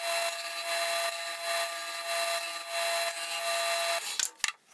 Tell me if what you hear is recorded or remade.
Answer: recorded